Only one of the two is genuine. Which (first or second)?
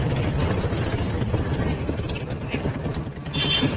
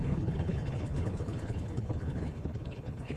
first